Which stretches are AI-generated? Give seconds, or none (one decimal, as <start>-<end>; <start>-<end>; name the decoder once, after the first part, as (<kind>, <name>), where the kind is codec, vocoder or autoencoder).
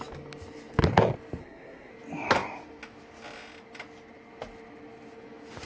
1.4-1.9 (codec, SNAC)